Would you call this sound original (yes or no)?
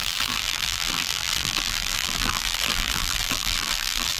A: no